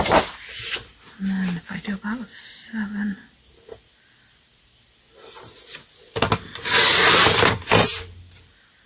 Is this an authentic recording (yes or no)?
yes